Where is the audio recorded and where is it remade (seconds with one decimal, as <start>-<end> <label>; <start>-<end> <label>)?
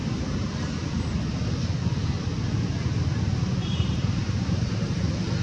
0.0-1.0 remade; 1.0-3.6 recorded; 3.6-5.0 remade; 5.0-5.4 recorded